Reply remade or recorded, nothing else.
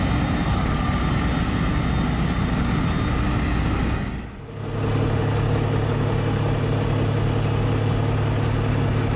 recorded